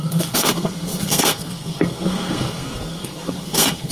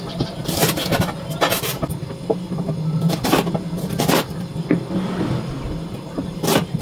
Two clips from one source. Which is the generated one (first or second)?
first